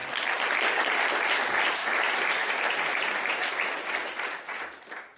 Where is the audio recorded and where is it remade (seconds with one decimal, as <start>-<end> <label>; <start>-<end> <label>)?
0.0-5.2 recorded